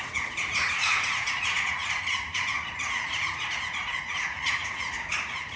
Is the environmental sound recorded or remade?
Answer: remade